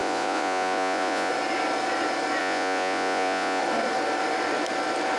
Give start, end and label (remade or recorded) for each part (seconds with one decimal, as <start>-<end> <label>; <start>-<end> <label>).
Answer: 0.0-1.3 remade; 1.3-2.4 recorded; 2.4-3.6 remade; 3.6-5.2 recorded